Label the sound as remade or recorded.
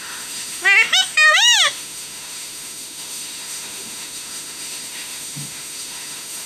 remade